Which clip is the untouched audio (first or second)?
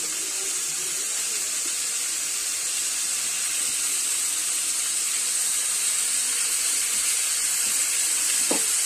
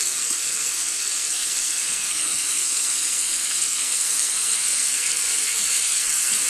first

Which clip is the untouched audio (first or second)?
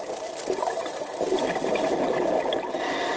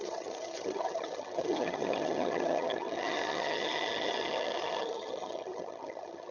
first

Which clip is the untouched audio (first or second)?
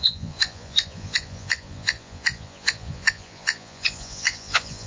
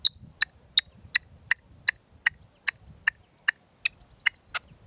second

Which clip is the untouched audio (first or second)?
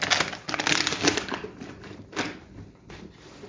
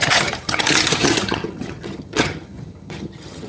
first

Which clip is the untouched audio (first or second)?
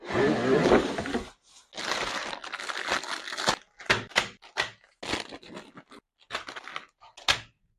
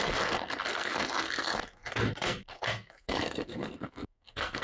first